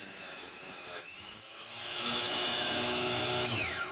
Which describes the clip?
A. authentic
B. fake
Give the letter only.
B